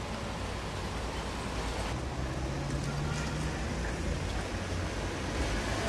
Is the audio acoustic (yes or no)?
yes